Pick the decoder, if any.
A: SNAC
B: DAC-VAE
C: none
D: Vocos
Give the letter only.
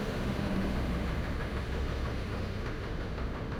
B